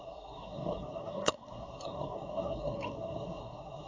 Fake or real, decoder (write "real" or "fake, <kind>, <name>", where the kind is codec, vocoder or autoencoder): fake, codec, SNAC